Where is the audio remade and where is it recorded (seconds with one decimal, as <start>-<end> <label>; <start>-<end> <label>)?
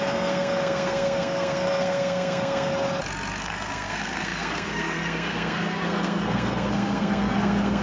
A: 0.0-2.7 remade; 2.7-3.4 recorded; 3.4-7.8 remade